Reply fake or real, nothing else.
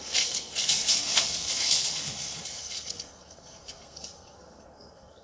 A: fake